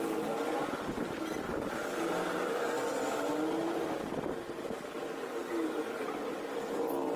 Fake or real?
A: real